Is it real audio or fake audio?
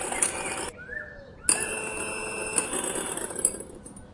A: real